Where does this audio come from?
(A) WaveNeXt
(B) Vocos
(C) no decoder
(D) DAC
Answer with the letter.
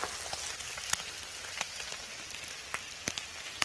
C